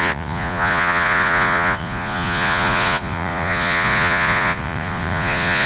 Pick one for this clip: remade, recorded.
remade